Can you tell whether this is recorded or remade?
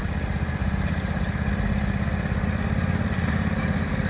remade